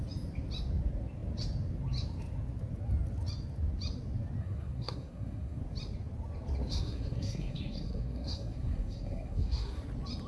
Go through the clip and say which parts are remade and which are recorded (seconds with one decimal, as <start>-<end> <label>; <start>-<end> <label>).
0.0-4.4 recorded; 4.4-5.6 remade; 5.6-6.7 recorded; 6.7-9.8 remade; 9.8-10.3 recorded